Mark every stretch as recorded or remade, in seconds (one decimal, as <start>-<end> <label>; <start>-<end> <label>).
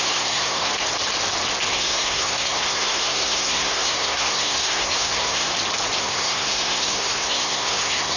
0.0-0.7 remade; 0.7-1.7 recorded; 1.7-5.5 remade; 5.5-6.0 recorded; 6.0-8.2 remade